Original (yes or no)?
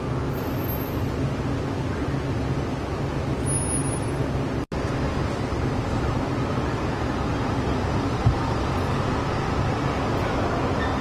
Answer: yes